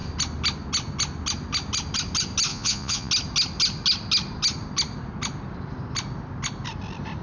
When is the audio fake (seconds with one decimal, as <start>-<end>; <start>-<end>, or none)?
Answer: 2.5-3.1